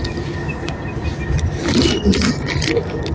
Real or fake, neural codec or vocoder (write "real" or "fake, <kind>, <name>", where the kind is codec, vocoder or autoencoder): real